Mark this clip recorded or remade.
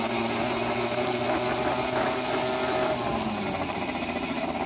recorded